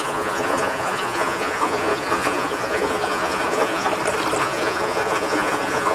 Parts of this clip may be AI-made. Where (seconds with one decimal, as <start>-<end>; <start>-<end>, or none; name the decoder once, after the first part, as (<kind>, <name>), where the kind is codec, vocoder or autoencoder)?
0.0-3.9 (vocoder, Vocos); 4.4-5.9